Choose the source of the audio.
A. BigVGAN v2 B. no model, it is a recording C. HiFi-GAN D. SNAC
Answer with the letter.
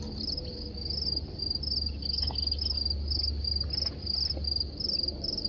B